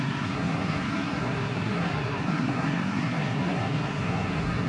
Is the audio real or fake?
fake